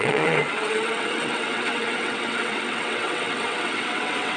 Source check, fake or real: fake